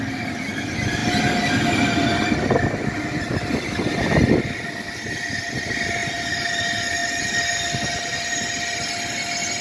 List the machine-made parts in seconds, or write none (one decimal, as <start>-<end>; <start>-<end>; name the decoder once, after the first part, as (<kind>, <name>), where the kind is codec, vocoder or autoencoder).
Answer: none